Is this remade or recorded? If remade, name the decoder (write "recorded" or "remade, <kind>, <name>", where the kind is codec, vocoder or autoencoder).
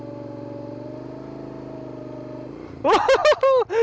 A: recorded